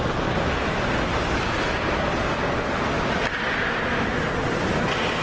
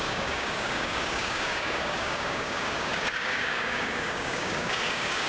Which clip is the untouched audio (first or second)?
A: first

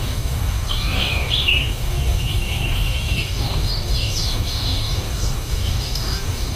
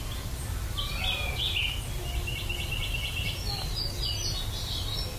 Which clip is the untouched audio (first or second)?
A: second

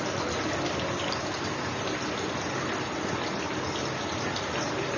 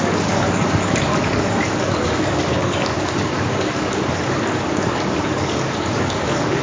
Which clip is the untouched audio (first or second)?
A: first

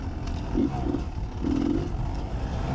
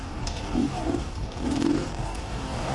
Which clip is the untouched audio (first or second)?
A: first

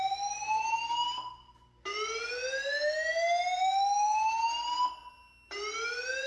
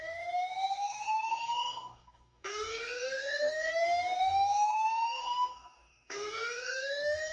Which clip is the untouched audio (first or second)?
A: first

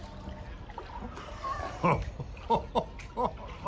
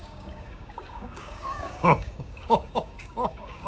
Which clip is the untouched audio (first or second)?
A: first